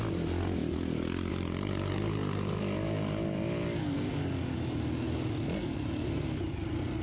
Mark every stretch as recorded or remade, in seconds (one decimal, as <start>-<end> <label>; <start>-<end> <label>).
0.0-7.0 recorded